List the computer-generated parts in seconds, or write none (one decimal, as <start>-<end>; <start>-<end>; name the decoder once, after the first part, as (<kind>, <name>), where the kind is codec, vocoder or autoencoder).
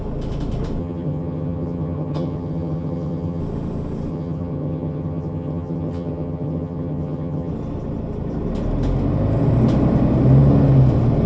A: 0.8-3.4 (vocoder, HiFi-GAN); 4.1-7.5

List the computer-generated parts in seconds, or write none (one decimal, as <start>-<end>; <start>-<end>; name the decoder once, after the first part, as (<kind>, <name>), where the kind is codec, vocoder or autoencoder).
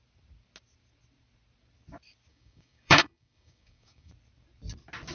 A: 2.3-4.1 (codec, DAC)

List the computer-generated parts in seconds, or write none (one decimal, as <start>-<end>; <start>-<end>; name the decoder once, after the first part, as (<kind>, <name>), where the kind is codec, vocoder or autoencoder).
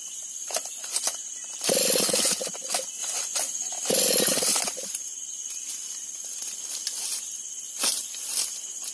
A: none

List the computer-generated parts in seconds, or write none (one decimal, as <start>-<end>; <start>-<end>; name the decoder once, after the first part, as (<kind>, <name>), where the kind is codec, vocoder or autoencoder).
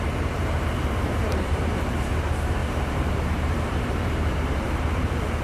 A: 0.0-5.4 (vocoder, BigVGAN v2)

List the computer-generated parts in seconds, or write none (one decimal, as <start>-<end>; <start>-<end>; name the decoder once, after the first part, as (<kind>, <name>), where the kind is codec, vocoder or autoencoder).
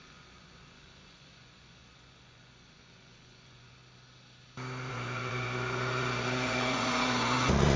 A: 0.0-3.8 (vocoder, Vocos); 4.9-7.8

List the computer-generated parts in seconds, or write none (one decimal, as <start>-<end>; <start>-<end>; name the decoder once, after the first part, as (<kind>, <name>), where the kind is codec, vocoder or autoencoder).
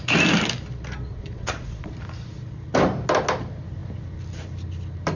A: 1.1-1.9 (vocoder, Vocos)